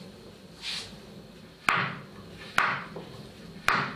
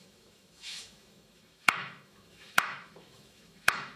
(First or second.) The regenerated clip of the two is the second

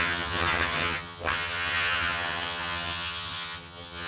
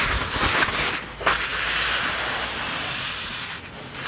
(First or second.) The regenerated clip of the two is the first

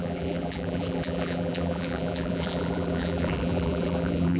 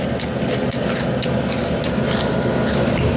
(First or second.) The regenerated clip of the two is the first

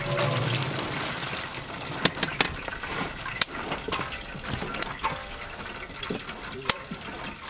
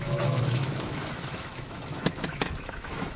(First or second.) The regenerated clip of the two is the second